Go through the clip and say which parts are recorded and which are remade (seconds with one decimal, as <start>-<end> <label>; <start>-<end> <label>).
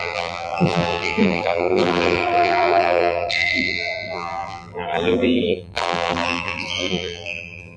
0.0-7.8 remade